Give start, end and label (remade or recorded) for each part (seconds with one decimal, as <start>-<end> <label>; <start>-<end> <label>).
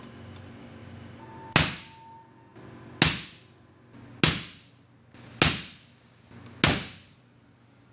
0.0-7.9 recorded